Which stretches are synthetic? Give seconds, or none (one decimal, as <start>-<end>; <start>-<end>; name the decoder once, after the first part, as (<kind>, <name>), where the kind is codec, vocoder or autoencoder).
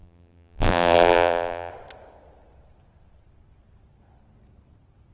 0.0-1.7 (vocoder, BigVGAN v2)